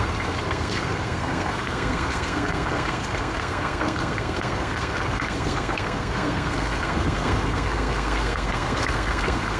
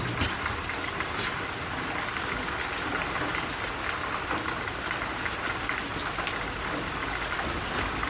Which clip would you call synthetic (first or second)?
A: first